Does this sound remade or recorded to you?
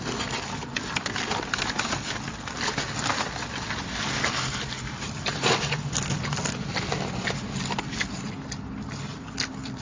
recorded